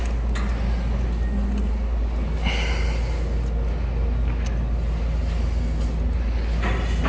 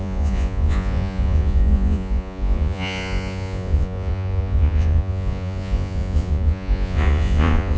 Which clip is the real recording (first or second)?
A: first